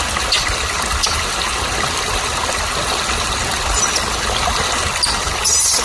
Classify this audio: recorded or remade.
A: recorded